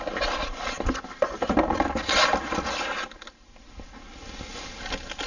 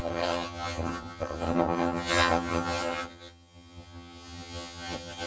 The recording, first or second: first